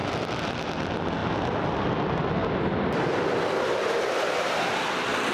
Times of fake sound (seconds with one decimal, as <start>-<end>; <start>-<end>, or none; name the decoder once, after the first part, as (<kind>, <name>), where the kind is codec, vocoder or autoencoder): 0.0-0.6 (vocoder, BigVGAN v2); 2.4-5.3

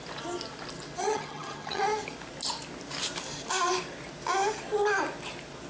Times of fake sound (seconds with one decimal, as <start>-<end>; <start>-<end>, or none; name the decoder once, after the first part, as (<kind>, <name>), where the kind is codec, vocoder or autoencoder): 1.0-1.8 (vocoder, HiFi-GAN)